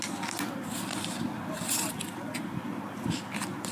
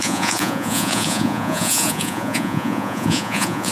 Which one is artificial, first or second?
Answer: second